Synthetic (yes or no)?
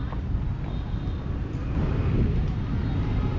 no